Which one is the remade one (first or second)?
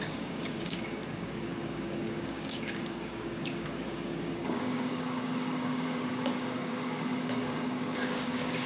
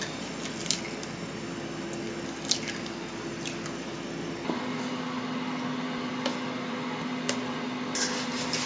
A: first